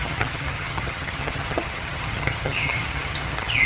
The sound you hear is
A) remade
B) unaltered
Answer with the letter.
A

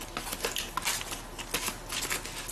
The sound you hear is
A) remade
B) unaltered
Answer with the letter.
B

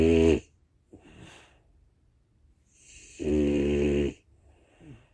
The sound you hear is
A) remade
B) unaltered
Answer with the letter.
A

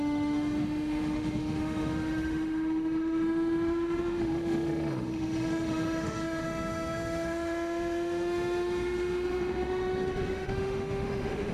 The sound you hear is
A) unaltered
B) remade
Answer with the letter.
B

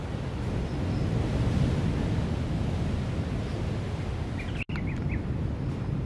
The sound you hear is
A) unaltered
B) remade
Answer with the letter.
A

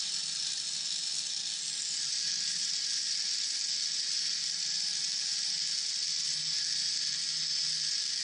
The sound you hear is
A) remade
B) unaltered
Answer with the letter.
B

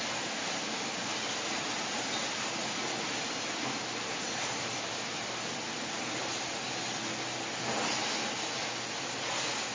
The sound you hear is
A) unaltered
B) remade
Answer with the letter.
A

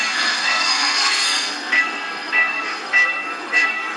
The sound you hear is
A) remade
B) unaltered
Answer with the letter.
A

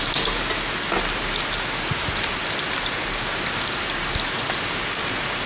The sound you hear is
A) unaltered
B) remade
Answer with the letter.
A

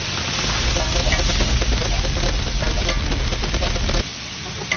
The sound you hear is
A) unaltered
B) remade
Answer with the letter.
A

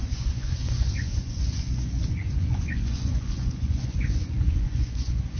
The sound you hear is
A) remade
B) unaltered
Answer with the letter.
A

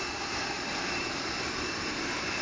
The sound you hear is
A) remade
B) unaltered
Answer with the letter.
A